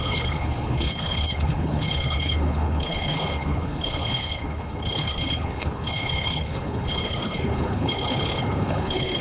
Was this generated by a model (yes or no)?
yes